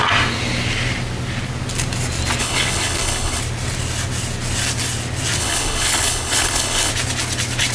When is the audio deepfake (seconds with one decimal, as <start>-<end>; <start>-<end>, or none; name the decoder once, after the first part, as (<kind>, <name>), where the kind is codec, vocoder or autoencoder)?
2.4-3.4 (codec, HILCodec); 5.4-6.9